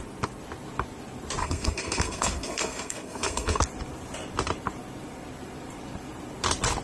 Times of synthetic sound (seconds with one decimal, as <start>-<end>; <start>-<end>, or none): 1.4-3.6